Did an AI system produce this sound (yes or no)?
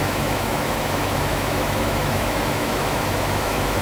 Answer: yes